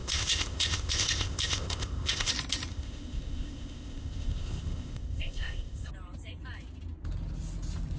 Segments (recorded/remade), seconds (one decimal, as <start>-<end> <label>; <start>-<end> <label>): 0.0-2.3 remade; 2.3-2.7 recorded; 2.7-5.9 remade; 5.9-8.0 recorded